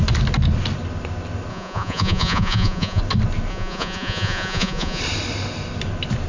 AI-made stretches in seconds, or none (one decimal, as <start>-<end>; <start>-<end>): 1.5-3.0; 3.5-5.0